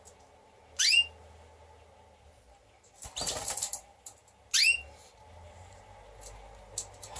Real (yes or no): yes